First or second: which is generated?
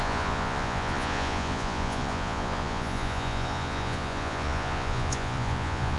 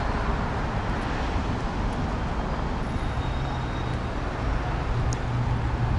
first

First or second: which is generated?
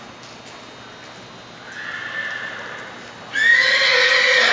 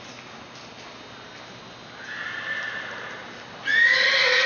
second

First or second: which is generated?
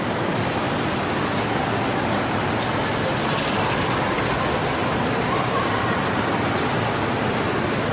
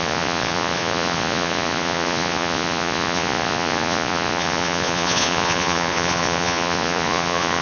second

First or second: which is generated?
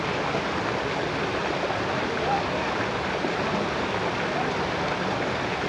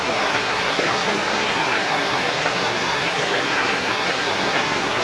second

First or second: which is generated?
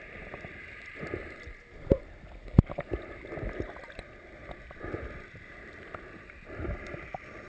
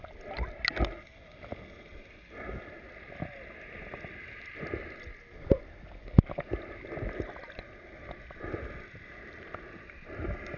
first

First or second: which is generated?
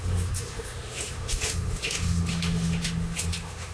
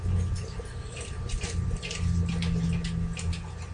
first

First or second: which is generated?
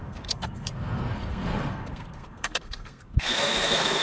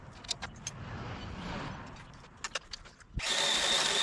first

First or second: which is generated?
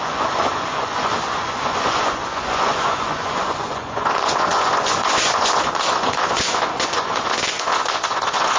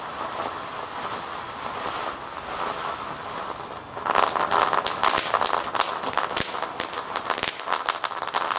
first